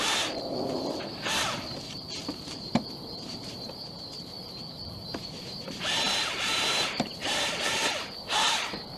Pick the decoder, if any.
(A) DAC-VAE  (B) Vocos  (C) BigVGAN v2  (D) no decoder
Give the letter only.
C